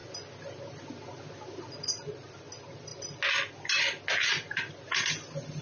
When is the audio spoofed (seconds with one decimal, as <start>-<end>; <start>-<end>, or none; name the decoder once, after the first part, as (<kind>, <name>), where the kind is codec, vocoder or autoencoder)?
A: none